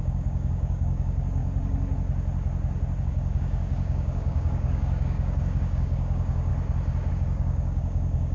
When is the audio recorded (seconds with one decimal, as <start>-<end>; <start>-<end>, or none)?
1.4-3.0; 6.5-7.1